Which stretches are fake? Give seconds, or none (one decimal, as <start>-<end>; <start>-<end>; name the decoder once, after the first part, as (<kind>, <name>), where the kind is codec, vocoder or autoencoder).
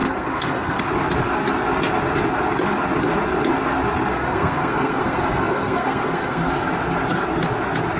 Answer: 0.0-0.8 (codec, SNAC); 4.1-6.5